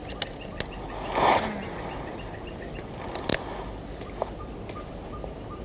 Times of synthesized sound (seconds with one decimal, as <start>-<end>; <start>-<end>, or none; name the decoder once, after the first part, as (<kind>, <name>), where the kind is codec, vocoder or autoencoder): none